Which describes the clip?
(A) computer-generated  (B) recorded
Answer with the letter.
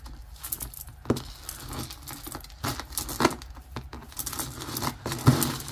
B